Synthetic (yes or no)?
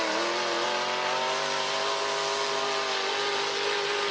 no